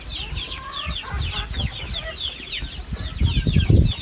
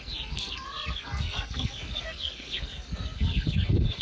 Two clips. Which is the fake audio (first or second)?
second